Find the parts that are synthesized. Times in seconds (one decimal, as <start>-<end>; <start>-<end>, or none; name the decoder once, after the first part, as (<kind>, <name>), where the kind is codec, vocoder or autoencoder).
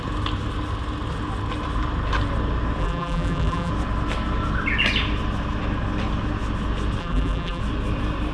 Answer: 2.8-3.7 (vocoder, BigVGAN v2); 7.0-7.6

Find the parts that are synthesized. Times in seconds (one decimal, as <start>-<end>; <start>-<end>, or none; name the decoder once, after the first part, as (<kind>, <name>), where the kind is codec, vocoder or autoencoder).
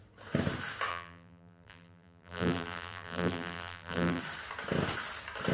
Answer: 0.9-4.2 (vocoder, BigVGAN v2)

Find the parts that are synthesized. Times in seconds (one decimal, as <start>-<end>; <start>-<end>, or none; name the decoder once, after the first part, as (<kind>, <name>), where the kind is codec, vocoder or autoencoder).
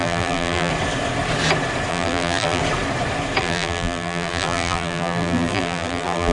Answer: 0.0-0.7 (vocoder, BigVGAN v2); 1.9-2.6; 3.4-6.3